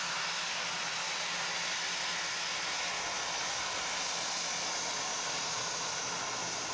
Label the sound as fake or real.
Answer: real